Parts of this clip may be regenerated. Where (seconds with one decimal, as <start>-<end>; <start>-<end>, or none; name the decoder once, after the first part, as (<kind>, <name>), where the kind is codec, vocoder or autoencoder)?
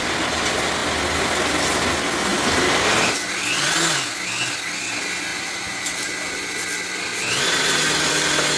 2.3-3.3 (vocoder, BigVGAN v2); 5.3-6.5; 7.1-8.1